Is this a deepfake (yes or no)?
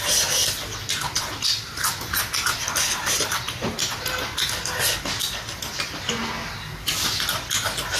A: no